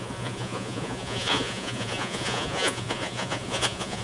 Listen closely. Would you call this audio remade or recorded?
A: remade